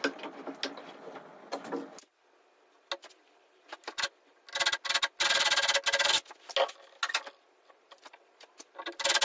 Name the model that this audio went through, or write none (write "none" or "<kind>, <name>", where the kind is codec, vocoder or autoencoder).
none